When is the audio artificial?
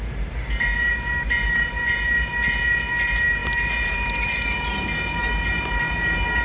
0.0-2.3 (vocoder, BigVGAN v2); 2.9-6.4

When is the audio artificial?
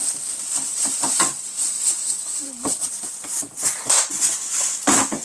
0.7-3.8 (vocoder, BigVGAN v2)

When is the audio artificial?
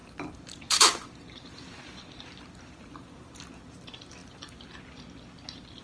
0.0-3.5 (vocoder, BigVGAN v2); 4.2-4.8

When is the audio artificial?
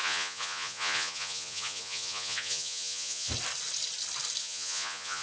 0.0-3.3 (vocoder, Vocos); 4.4-5.2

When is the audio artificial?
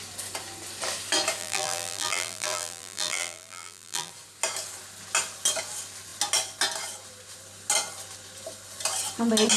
1.4-4.1 (vocoder, BigVGAN v2)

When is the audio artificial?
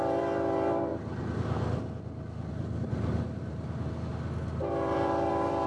0.0-0.9 (vocoder, BigVGAN v2); 2.5-4.1; 4.7-5.7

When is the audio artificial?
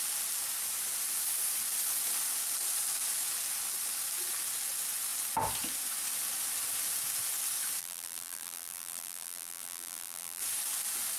7.8-10.4 (vocoder, BigVGAN v2)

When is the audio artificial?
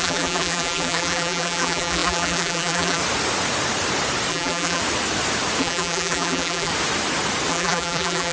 0.0-3.0 (vocoder, BigVGAN v2); 4.3-4.8; 5.6-6.7; 7.5-8.3